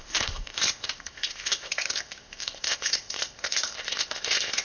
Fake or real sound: fake